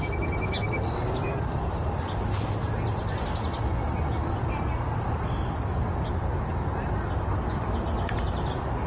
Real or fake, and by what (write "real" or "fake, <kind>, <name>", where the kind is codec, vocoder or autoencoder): real